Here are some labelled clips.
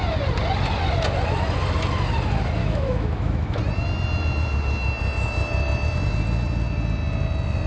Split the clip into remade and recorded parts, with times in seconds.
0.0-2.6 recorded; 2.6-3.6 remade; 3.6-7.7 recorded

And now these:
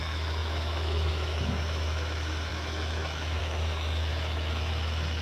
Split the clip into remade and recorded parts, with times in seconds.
0.0-5.2 remade